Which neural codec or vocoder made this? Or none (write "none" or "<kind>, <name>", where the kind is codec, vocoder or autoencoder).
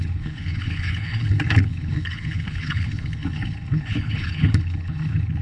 codec, HILCodec